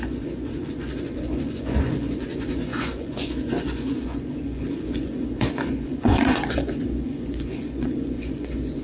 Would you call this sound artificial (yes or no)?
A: yes